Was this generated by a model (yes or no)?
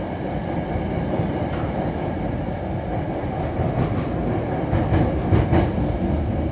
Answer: no